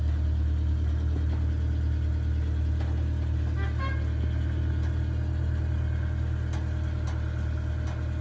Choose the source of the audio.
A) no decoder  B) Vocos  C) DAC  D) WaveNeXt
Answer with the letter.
A